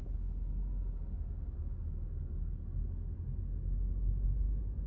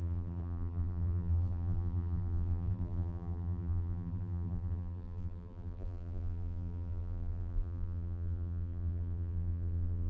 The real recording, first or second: first